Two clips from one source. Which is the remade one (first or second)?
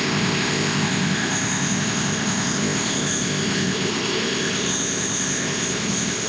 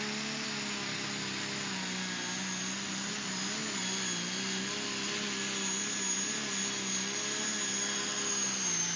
first